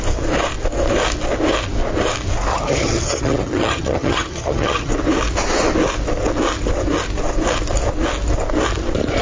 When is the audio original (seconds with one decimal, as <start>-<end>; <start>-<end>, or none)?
0.0-2.5; 4.9-9.2